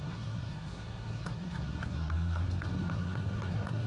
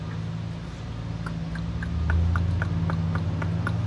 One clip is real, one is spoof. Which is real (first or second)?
second